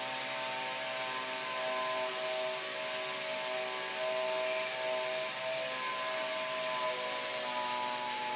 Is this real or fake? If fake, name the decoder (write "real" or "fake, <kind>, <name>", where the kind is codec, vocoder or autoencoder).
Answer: real